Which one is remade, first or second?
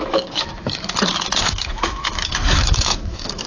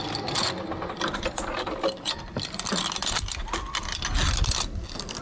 first